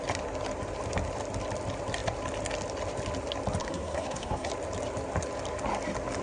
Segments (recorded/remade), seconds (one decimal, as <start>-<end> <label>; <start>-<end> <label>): 0.0-3.6 recorded; 3.6-4.5 remade; 4.5-6.2 recorded